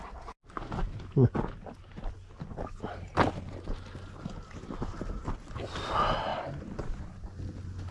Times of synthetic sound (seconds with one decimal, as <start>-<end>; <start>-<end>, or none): 6.3-7.1